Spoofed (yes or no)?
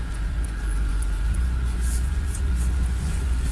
yes